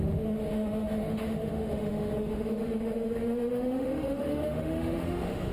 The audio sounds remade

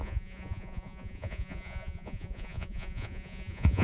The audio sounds remade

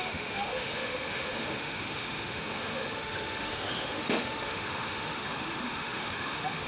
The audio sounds remade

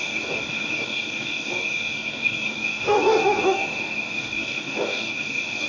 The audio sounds remade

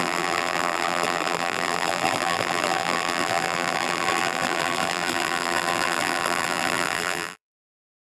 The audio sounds remade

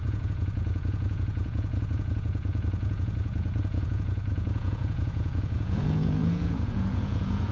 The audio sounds remade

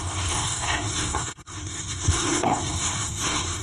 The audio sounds remade